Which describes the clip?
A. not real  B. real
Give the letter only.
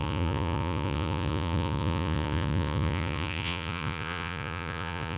A